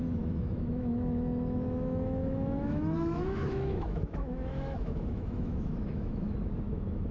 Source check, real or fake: fake